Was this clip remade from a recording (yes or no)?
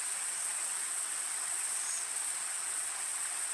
yes